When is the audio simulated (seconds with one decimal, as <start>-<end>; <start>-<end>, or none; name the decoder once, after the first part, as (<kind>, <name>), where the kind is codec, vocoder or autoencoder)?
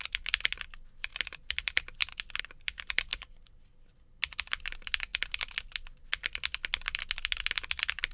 none